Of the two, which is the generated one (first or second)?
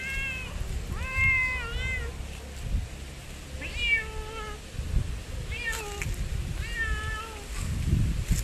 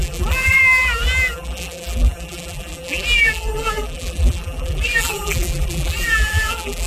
second